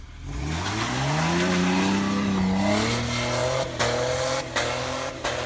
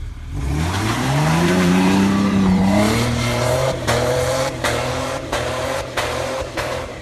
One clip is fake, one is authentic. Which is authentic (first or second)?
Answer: first